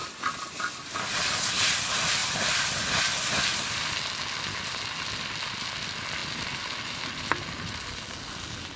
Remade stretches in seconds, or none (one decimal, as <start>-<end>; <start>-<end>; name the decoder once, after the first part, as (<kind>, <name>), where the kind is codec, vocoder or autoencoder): none